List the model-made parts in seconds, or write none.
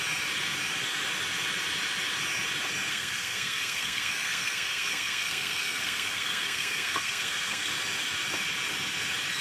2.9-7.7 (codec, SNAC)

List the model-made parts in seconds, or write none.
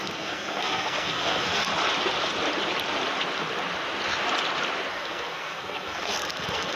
0.0-1.7 (codec, SNAC); 4.9-6.8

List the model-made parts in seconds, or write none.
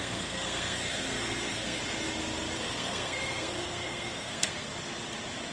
0.0-1.8 (codec, SNAC); 2.6-4.7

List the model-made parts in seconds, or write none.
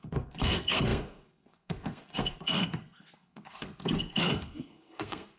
0.0-5.4 (codec, SNAC)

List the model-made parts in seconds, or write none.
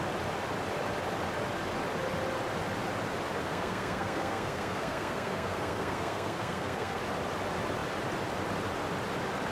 3.4-7.0 (codec, SNAC)